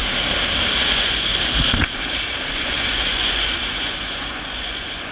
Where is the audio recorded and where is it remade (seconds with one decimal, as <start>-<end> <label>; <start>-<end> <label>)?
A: 0.0-0.8 recorded; 0.8-1.3 remade; 1.3-2.5 recorded; 2.5-5.1 remade